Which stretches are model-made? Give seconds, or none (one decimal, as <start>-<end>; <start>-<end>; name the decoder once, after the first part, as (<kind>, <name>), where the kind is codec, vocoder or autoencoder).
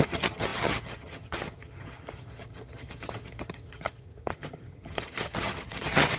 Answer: 0.0-6.2 (vocoder, HiFi-GAN)